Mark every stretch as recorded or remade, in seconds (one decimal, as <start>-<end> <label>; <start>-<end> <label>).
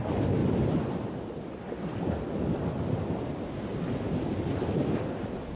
0.0-5.6 recorded